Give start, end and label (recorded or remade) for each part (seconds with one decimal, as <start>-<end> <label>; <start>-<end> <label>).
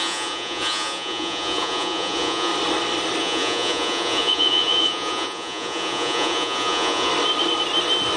0.0-2.5 remade; 2.5-3.2 recorded; 3.2-7.1 remade; 7.1-8.2 recorded